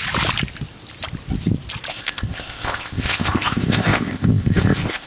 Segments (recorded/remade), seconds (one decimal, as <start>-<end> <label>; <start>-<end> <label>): 0.0-1.9 recorded; 1.9-5.1 remade